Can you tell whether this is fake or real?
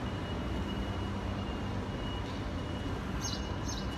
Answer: real